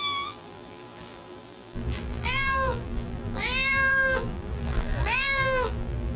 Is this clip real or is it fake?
fake